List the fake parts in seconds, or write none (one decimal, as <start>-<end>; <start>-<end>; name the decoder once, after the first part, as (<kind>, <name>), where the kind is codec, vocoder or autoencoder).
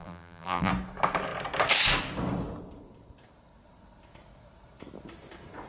0.0-0.7 (vocoder, BigVGAN v2)